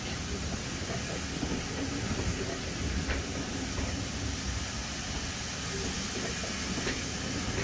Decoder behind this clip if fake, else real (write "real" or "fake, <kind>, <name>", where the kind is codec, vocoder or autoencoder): real